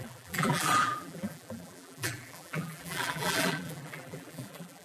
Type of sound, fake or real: fake